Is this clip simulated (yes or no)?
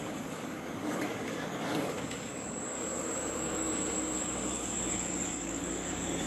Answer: yes